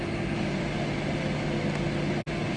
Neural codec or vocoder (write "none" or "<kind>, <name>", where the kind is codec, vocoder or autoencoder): none